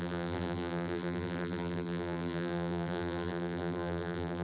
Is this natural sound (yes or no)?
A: no